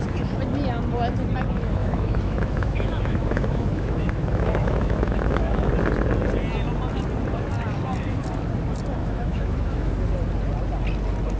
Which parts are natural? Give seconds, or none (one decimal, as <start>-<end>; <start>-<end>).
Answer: 0.0-1.8; 5.7-9.0; 9.9-11.4